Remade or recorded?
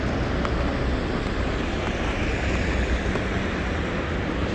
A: recorded